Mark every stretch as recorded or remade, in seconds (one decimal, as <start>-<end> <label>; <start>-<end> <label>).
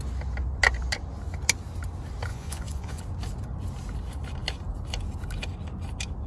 0.0-2.3 recorded; 2.3-3.0 remade; 3.0-6.3 recorded